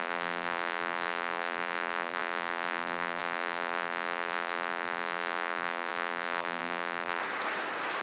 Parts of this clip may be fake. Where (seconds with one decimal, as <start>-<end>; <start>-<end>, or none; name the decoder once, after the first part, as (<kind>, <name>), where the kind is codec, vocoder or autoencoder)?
0.0-7.2 (vocoder, BigVGAN v2)